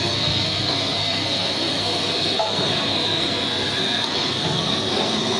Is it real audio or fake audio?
fake